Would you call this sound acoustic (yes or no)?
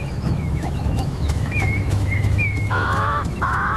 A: no